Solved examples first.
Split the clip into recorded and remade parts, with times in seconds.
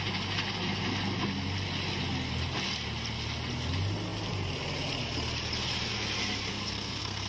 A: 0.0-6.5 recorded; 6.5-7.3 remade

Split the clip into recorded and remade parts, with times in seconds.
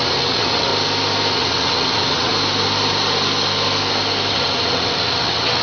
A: 0.0-0.7 remade; 0.7-1.3 recorded; 1.3-2.3 remade; 2.3-4.3 recorded; 4.3-5.6 remade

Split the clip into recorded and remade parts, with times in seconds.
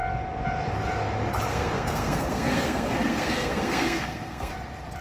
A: 0.0-1.5 recorded; 1.5-4.5 remade; 4.5-5.0 recorded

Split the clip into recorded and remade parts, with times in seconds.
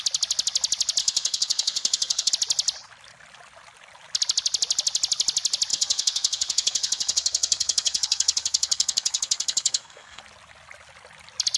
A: 0.0-1.0 recorded; 1.0-2.3 remade; 2.3-5.7 recorded; 5.7-10.2 remade; 10.2-11.6 recorded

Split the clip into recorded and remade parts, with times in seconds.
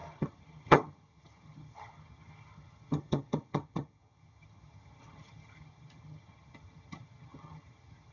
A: 0.0-8.1 remade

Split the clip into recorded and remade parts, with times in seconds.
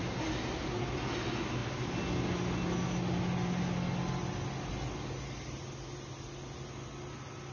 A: 0.0-7.5 recorded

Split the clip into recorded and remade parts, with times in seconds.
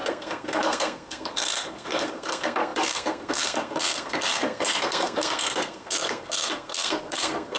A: 0.0-7.6 remade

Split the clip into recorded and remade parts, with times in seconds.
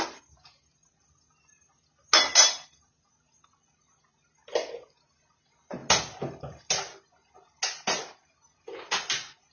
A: 0.0-9.5 recorded